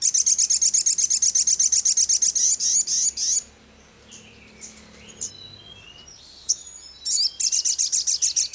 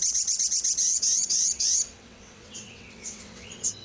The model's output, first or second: second